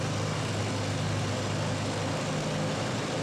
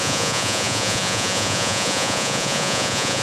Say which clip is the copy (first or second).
second